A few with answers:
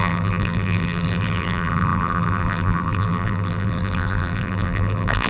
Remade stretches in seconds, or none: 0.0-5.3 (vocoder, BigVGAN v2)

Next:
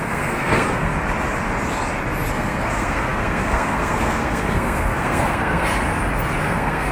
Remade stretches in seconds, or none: 0.0-0.9 (codec, SNAC); 2.3-5.7; 6.4-6.9

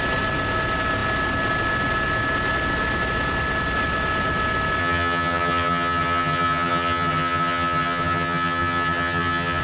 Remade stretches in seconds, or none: 4.8-9.6 (vocoder, HiFi-GAN)